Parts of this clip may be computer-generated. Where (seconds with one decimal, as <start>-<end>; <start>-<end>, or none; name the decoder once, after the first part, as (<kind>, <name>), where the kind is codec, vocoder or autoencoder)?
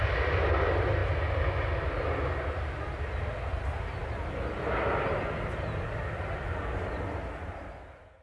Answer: none